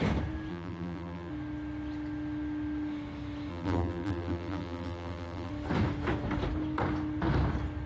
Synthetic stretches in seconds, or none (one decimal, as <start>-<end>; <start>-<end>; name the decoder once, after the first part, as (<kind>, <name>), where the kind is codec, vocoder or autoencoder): 0.5-1.3 (vocoder, BigVGAN v2); 3.5-5.5